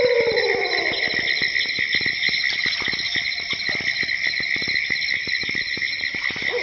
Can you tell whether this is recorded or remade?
recorded